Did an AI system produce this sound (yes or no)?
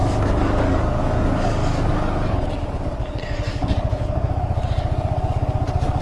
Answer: yes